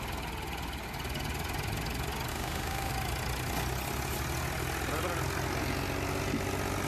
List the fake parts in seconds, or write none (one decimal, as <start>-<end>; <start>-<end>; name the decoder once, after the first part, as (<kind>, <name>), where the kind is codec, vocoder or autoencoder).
2.3-2.9 (autoencoder, DAC-VAE)